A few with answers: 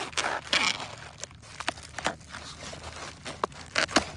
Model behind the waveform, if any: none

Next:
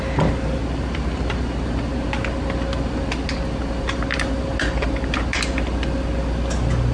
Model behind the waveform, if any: none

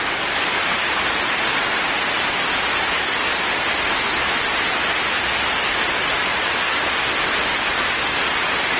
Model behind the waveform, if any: none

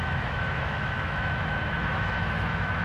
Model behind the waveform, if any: autoencoder, DAC-VAE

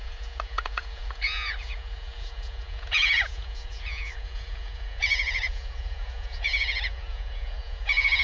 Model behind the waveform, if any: vocoder, Vocos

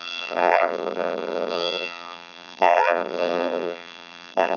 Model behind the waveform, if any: vocoder, BigVGAN v2